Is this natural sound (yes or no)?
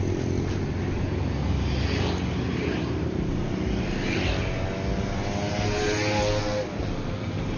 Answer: yes